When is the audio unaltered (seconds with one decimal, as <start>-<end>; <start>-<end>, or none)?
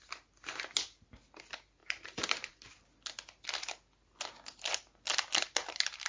0.0-6.1